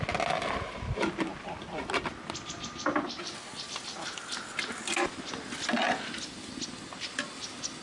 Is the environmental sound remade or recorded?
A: recorded